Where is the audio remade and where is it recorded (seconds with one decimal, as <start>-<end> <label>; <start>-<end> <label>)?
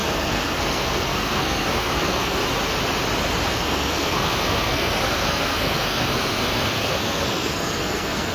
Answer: 0.0-2.4 remade; 2.4-3.5 recorded; 3.5-8.3 remade